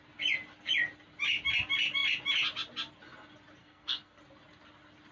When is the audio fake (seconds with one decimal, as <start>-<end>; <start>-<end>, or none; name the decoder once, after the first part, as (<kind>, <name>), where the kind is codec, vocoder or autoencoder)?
3.6-4.2 (codec, SNAC)